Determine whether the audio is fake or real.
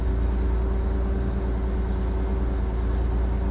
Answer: real